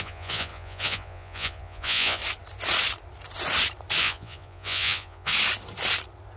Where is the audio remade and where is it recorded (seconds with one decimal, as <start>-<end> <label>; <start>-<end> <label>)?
0.0-2.2 remade; 2.2-4.0 recorded; 4.0-5.3 remade; 5.3-6.4 recorded